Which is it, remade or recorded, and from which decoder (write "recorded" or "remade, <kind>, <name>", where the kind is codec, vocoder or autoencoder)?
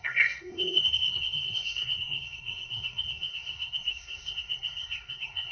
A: remade, codec, SNAC